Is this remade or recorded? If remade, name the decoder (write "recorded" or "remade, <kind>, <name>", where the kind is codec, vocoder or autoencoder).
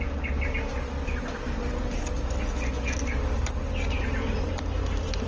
recorded